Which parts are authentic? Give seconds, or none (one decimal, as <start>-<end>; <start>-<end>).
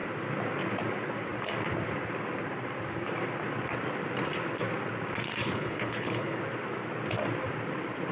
0.0-5.4; 6.4-8.1